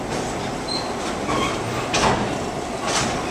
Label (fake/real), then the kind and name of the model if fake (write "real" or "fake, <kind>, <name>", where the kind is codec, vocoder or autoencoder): real